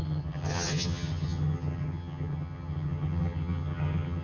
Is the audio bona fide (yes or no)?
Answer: no